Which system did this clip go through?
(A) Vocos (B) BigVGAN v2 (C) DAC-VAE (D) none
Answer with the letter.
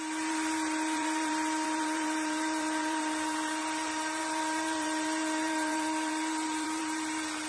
B